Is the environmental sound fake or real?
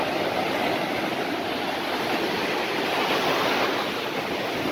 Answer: real